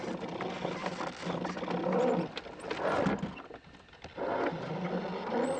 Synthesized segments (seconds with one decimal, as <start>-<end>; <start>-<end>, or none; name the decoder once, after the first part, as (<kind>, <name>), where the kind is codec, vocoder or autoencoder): none